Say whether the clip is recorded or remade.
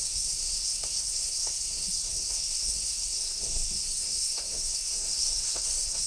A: remade